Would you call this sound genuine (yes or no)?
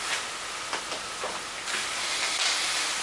yes